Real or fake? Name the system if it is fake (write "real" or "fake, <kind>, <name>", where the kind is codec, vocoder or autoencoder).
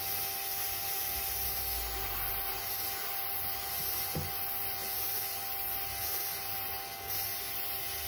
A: real